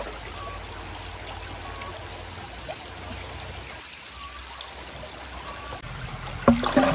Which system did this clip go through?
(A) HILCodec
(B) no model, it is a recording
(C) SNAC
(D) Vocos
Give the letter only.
B